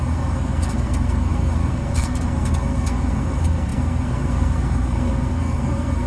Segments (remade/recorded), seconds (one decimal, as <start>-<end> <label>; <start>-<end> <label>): 0.0-6.1 remade